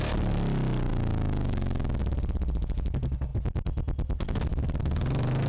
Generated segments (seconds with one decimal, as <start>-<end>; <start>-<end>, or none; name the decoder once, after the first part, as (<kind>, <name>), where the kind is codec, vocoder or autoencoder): 0.9-2.0 (autoencoder, DAC-VAE)